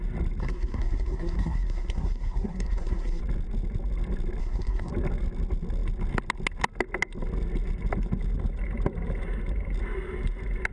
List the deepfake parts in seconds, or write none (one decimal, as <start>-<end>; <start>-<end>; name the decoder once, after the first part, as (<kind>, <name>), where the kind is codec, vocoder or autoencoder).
0.4-3.2 (codec, SNAC); 4.4-4.9